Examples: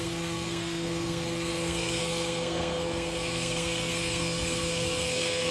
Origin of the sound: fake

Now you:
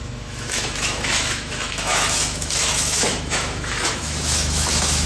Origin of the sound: fake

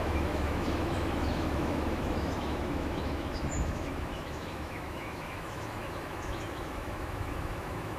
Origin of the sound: fake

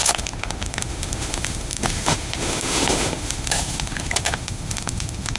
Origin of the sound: fake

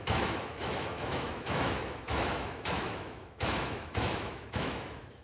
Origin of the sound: fake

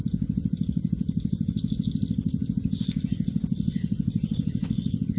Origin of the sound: real